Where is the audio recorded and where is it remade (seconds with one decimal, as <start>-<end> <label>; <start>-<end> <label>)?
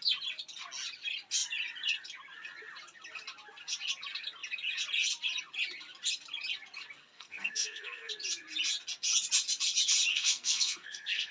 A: 0.0-7.0 recorded; 7.0-8.1 remade; 8.1-10.1 recorded; 10.1-11.3 remade